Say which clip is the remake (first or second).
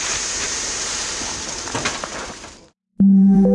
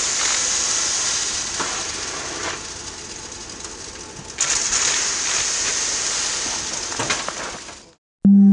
first